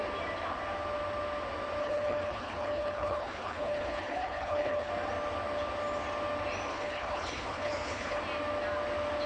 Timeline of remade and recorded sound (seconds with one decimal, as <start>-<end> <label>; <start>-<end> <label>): 0.0-1.8 recorded; 1.8-4.9 remade; 4.9-6.7 recorded; 6.7-8.2 remade; 8.2-9.3 recorded